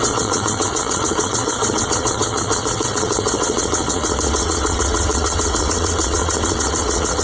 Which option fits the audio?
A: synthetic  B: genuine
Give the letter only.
A